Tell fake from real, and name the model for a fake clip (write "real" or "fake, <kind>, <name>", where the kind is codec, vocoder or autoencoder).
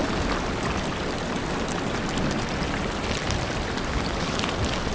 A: real